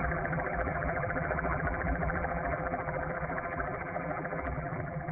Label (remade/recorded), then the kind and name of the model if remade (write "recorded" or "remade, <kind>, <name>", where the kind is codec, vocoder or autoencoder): remade, vocoder, BigVGAN v2